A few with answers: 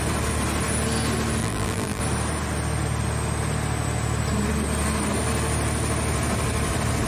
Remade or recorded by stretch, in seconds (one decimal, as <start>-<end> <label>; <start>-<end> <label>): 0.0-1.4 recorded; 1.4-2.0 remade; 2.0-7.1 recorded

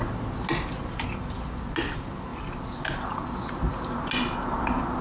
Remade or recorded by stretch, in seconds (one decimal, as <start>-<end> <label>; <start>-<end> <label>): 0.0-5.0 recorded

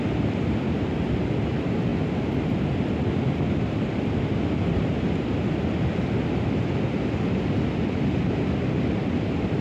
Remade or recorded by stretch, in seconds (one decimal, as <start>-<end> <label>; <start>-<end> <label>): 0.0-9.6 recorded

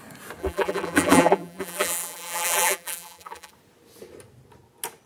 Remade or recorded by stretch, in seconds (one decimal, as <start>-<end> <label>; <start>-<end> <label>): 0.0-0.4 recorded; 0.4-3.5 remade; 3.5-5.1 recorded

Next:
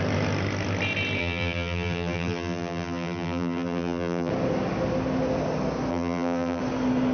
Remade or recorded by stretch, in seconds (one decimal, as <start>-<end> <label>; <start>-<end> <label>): 0.0-1.2 recorded; 1.2-4.3 remade; 4.3-5.9 recorded; 5.9-6.6 remade; 6.6-7.1 recorded

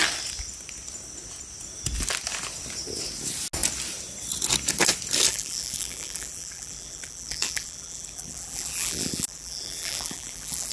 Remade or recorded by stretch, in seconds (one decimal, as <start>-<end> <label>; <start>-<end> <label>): 0.0-5.3 recorded; 5.3-10.7 remade